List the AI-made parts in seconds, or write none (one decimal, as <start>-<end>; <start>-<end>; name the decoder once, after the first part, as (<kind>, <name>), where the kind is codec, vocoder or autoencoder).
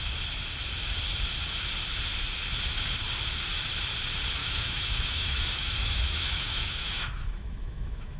4.4-8.2 (autoencoder, DAC-VAE)